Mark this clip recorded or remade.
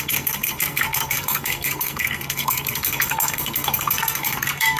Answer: remade